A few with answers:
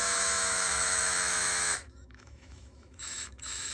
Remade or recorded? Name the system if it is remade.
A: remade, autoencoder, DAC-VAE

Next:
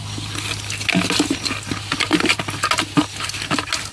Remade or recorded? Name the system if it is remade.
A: recorded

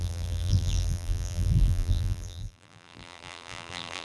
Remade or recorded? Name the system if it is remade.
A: remade, vocoder, BigVGAN v2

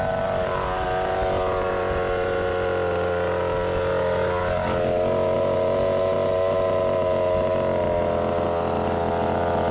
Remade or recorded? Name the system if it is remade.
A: recorded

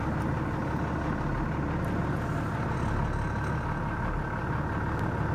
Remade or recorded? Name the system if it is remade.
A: recorded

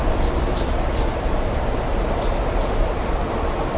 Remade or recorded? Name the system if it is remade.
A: recorded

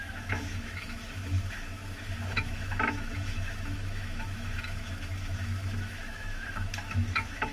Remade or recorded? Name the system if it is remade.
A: remade, autoencoder, DAC-VAE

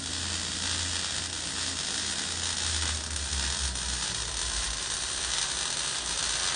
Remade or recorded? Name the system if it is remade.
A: recorded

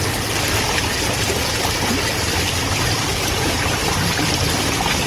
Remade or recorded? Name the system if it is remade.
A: recorded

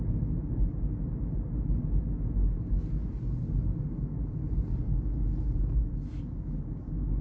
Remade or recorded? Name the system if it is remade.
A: recorded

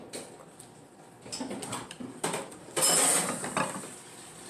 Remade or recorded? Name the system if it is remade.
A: recorded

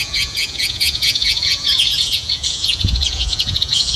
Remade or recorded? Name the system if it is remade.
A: remade, vocoder, Vocos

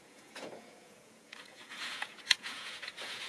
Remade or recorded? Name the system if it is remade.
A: remade, vocoder, Vocos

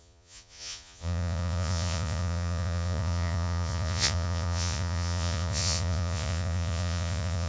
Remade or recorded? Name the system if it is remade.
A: remade, vocoder, Vocos